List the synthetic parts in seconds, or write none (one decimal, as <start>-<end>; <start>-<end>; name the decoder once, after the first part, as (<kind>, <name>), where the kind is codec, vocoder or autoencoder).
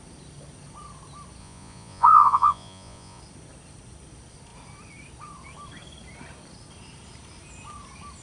1.4-3.2 (vocoder, Vocos)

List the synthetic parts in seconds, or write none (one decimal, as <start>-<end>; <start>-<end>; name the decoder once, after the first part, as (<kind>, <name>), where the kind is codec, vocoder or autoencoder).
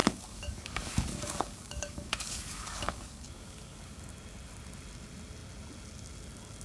0.0-4.0 (codec, DAC)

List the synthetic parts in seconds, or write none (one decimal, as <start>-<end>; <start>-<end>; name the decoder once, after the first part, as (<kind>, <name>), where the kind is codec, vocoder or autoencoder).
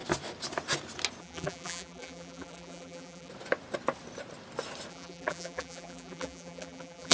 1.2-3.3 (vocoder, BigVGAN v2); 4.9-7.1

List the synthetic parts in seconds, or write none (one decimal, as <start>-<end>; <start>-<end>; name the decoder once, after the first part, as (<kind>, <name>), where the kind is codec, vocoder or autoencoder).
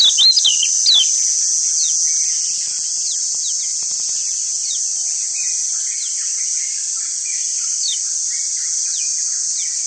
none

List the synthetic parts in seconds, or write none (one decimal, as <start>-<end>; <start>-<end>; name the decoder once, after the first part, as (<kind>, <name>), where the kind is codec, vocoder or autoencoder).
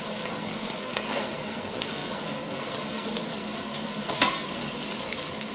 0.0-5.5 (codec, SNAC)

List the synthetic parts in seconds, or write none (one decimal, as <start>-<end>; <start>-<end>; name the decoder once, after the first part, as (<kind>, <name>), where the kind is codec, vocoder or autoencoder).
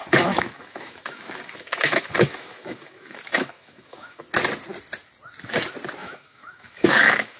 0.0-4.2 (autoencoder, DAC-VAE); 6.0-7.4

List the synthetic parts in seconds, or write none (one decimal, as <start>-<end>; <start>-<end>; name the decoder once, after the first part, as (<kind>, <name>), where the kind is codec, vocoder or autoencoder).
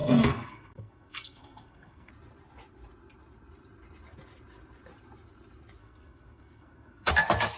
0.0-2.1 (codec, SNAC); 5.8-7.1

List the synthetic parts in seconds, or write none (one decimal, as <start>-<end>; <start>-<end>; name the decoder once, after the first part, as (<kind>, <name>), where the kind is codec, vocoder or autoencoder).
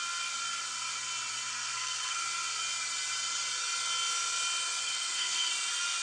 1.5-2.2 (codec, SNAC); 4.8-5.5